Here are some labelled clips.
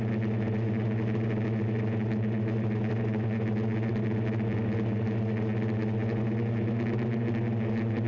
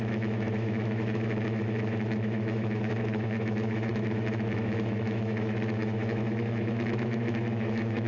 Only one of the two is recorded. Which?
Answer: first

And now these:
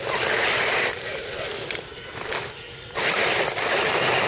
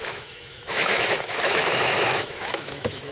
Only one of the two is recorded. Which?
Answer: first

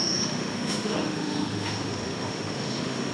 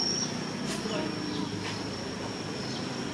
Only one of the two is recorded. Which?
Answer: second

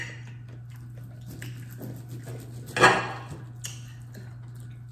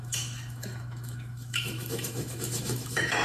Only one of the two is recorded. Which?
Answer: first